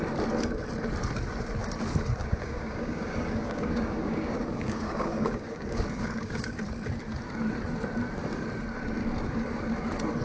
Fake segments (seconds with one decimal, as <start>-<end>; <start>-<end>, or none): 2.2-6.5